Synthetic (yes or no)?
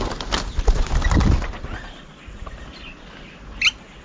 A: no